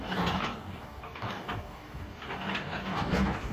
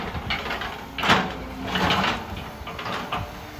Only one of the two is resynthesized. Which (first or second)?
first